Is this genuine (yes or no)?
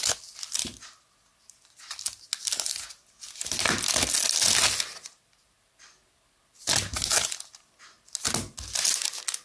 yes